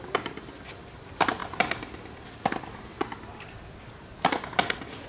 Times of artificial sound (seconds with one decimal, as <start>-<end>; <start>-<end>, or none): none